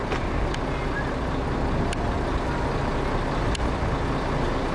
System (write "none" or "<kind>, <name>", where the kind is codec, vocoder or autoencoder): none